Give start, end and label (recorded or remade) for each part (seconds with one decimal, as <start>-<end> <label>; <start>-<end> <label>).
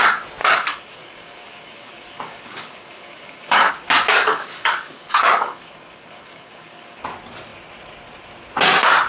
0.0-0.4 recorded; 0.4-3.7 remade; 3.7-4.3 recorded; 4.3-7.0 remade; 7.0-9.1 recorded